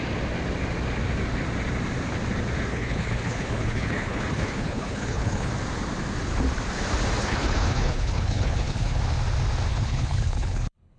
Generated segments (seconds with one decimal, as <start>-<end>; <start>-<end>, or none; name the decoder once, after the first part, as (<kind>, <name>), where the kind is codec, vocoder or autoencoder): 2.7-5.5 (codec, HILCodec); 7.2-9.0; 9.7-11.0